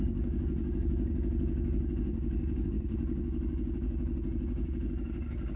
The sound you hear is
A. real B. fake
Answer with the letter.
B